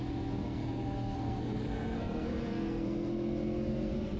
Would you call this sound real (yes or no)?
no